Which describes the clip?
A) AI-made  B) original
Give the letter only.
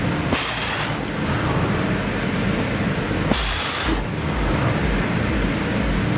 B